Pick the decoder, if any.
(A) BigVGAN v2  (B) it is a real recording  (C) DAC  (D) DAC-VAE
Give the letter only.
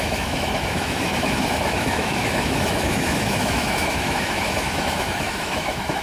D